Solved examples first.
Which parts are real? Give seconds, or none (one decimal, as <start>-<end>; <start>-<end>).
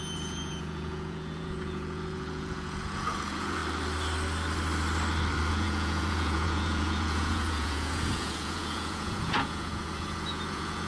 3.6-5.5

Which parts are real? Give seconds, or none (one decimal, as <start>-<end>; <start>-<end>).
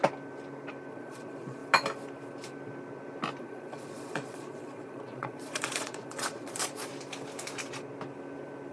0.0-0.9; 1.6-3.4; 6.9-8.7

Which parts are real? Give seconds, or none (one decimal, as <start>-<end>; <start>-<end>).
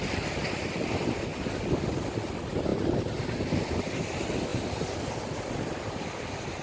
0.0-6.6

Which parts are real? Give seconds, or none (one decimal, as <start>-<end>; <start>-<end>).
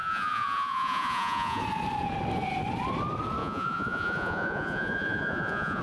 1.6-3.4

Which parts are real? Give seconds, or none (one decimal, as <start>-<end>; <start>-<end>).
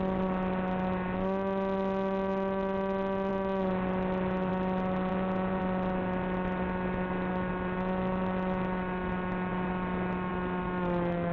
0.0-5.1; 5.6-11.3